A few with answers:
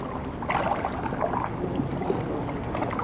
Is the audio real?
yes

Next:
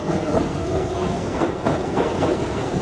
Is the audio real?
no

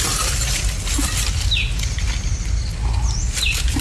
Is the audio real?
yes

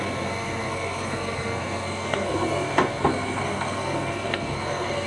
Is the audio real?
no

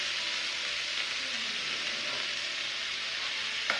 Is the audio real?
yes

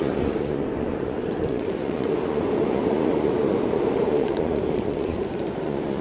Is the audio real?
no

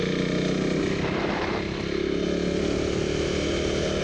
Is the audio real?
yes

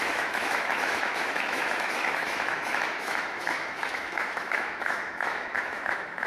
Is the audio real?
no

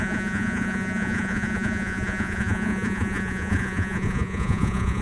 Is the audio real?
no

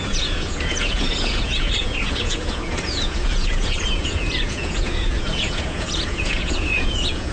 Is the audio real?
no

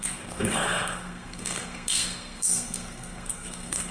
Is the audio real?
no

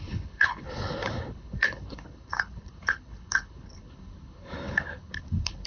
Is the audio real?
no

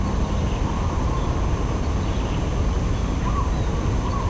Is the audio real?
yes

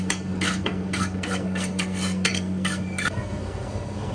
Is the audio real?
no